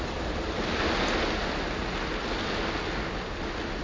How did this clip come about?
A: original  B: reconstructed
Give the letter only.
A